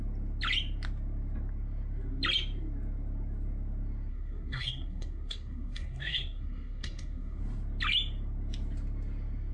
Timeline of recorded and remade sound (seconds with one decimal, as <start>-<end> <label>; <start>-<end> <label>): 0.0-4.1 recorded; 4.1-7.4 remade; 7.4-9.5 recorded